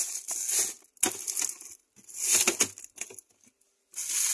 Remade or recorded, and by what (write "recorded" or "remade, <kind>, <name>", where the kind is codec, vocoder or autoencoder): recorded